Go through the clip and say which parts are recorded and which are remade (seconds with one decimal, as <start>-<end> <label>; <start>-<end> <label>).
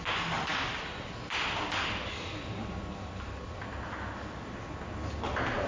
0.0-5.7 recorded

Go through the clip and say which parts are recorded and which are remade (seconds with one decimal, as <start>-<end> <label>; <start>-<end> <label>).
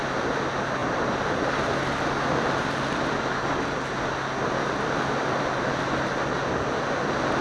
0.0-7.4 recorded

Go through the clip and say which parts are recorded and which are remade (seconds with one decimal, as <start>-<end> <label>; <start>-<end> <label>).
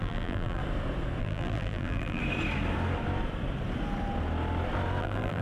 0.0-0.6 remade; 0.6-1.2 recorded; 1.2-2.2 remade; 2.2-5.0 recorded; 5.0-5.4 remade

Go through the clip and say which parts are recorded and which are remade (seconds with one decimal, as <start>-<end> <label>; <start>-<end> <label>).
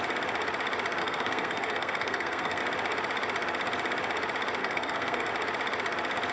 0.0-1.0 recorded; 1.0-2.6 remade; 2.6-4.6 recorded; 4.6-5.3 remade; 5.3-6.3 recorded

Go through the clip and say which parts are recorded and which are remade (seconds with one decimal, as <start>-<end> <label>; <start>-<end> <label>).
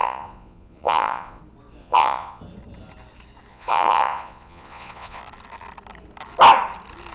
0.0-1.4 remade; 1.4-1.8 recorded; 1.8-2.4 remade; 2.4-3.5 recorded; 3.5-5.2 remade; 5.2-7.1 recorded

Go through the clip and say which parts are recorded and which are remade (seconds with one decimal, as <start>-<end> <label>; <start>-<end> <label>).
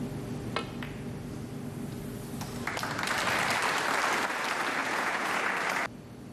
0.0-4.8 recorded; 4.8-5.3 remade; 5.3-6.3 recorded